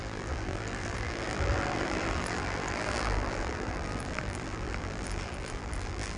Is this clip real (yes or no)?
no